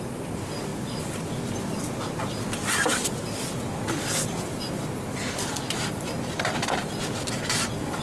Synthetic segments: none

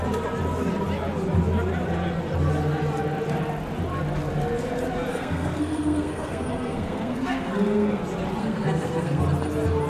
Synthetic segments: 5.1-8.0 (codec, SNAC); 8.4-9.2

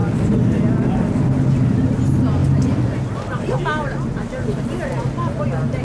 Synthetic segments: none

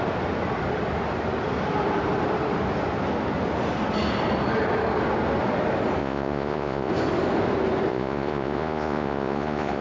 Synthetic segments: 6.0-6.9 (vocoder, Vocos); 7.9-9.8

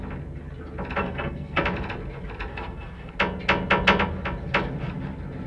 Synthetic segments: 1.0-1.6 (codec, SNAC); 2.5-3.1

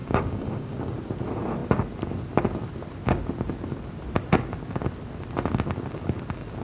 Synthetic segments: 0.0-0.8 (codec, DAC)